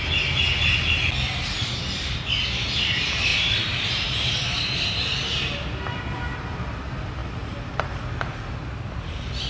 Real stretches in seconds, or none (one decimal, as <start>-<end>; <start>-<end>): 0.0-3.3; 4.9-9.5